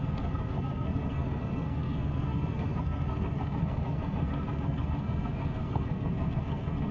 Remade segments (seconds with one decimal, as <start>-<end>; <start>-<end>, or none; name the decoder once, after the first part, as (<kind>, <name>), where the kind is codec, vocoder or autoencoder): 0.0-6.9 (codec, SNAC)